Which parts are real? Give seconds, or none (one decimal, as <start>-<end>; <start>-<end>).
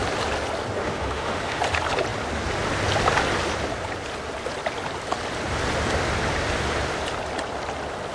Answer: 0.0-0.8; 1.6-8.1